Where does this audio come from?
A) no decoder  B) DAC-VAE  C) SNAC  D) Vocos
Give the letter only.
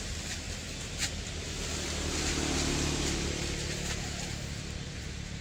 A